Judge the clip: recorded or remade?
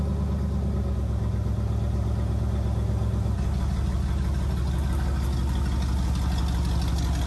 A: recorded